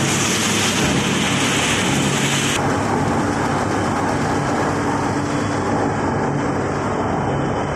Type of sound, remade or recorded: recorded